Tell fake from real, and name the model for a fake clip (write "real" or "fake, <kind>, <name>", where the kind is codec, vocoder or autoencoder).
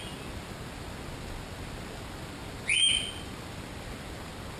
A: real